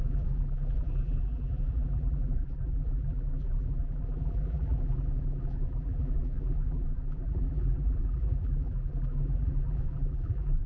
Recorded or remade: remade